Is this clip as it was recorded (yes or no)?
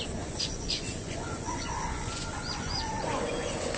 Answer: no